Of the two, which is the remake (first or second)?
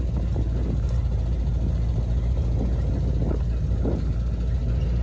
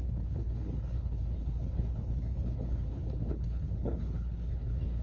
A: second